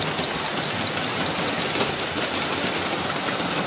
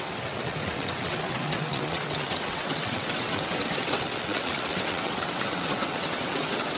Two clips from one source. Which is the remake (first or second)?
second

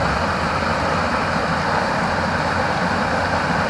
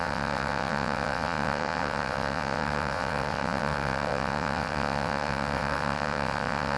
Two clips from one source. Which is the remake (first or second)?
second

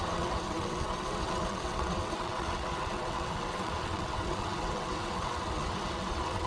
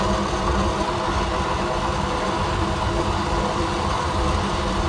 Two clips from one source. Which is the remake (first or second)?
first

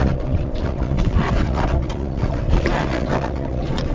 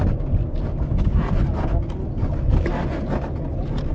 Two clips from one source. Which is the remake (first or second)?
first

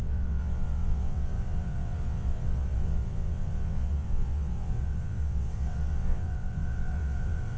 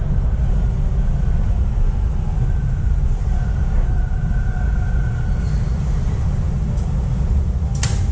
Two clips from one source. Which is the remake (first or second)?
first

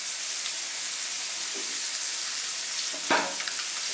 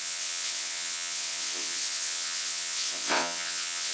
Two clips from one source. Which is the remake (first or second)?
second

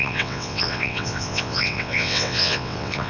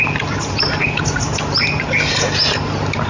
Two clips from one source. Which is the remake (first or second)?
first